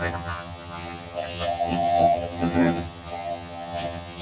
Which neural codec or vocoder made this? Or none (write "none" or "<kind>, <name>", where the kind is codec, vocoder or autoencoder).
vocoder, HiFi-GAN